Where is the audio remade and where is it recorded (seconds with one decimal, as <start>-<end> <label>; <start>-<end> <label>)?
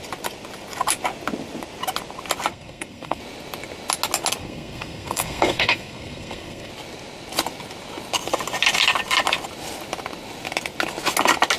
0.0-2.5 recorded; 2.5-3.2 remade; 3.2-4.4 recorded; 4.4-6.7 remade; 6.7-11.6 recorded